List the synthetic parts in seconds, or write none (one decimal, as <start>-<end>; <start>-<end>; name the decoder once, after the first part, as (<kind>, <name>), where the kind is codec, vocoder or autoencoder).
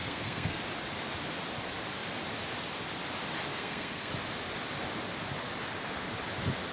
0.0-0.6 (codec, SNAC); 3.5-4.1